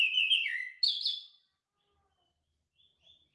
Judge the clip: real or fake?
real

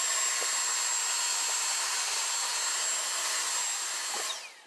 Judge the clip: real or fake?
real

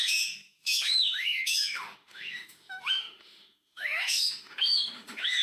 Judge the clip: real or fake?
fake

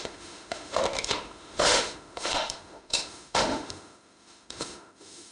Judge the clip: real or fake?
fake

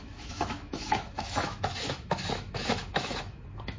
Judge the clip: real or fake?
fake